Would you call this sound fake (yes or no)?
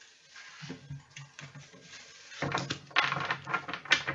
no